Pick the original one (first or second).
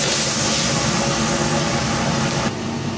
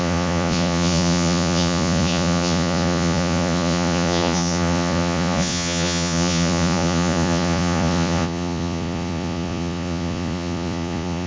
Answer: first